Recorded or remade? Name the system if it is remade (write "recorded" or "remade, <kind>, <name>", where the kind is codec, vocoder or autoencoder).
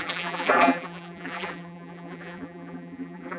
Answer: remade, vocoder, BigVGAN v2